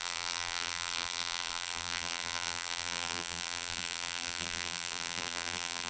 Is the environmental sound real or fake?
fake